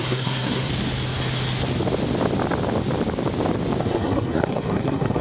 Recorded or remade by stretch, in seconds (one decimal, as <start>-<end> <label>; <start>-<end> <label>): 0.0-0.7 remade; 0.7-3.8 recorded; 3.8-5.2 remade